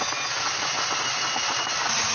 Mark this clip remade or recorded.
recorded